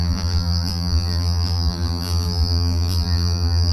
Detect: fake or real fake